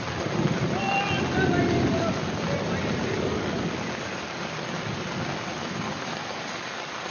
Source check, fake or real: real